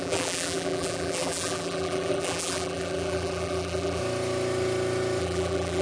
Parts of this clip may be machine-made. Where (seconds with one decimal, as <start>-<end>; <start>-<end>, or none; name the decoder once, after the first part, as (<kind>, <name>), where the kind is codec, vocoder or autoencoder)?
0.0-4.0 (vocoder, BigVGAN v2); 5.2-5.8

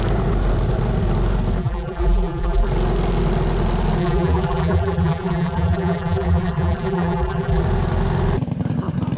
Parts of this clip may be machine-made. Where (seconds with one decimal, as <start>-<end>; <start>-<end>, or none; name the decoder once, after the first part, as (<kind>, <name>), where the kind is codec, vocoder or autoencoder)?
1.6-2.7 (vocoder, BigVGAN v2); 4.0-7.6

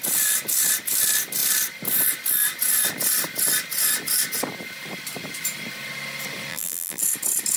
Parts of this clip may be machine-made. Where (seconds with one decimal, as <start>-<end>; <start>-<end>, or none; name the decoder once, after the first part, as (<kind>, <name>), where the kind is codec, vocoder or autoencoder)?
6.5-7.0 (vocoder, BigVGAN v2)